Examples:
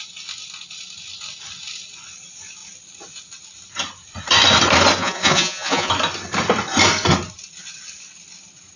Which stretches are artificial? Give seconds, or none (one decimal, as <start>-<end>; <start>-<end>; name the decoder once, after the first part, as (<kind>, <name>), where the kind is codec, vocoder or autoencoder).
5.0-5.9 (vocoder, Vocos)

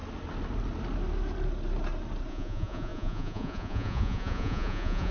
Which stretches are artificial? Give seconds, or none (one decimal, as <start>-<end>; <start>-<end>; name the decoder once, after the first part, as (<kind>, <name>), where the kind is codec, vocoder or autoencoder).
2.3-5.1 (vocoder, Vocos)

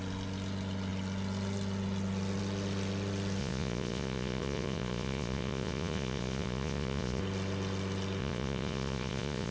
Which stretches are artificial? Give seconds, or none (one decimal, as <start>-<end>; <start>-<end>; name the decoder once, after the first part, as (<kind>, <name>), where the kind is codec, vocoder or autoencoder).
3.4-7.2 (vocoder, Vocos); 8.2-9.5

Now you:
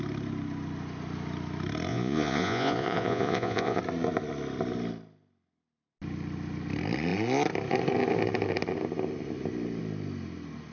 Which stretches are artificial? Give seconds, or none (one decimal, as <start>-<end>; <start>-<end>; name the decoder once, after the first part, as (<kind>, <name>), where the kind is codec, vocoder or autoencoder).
1.9-3.8 (vocoder, Vocos)

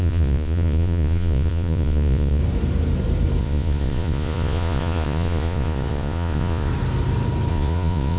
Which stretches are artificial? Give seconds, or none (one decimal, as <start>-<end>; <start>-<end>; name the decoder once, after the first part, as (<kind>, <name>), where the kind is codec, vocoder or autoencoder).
0.0-2.4 (vocoder, Vocos); 3.4-6.7; 7.5-8.2

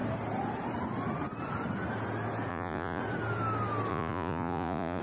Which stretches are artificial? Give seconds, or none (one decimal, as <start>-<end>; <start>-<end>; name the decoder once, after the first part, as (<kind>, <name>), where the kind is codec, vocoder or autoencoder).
2.5-3.0 (vocoder, Vocos); 3.9-5.0

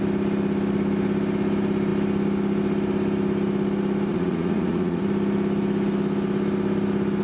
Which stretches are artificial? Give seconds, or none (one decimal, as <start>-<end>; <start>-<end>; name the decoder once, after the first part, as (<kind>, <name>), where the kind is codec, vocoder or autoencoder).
4.1-5.0 (vocoder, Vocos)